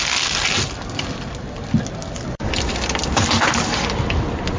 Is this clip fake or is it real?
real